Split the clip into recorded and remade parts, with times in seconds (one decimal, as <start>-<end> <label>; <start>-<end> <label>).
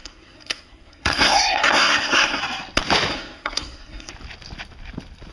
0.0-2.4 remade; 2.4-3.1 recorded; 3.1-4.1 remade; 4.1-5.3 recorded